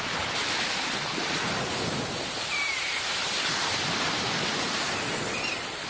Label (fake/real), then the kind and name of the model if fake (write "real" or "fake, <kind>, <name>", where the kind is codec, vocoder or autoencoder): real